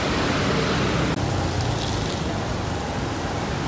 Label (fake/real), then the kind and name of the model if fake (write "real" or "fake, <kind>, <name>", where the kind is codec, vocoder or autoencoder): real